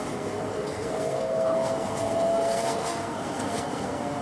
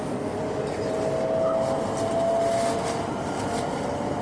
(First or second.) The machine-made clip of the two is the first